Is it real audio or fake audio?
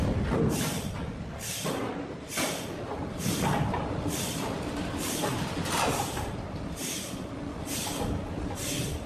real